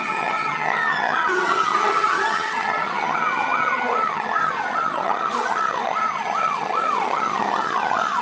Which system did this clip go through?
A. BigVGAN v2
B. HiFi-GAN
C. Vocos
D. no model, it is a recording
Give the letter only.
B